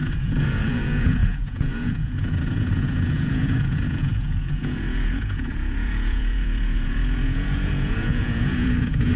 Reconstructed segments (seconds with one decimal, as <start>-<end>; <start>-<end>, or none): 0.0-9.2